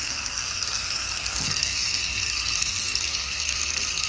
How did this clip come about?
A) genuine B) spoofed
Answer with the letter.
B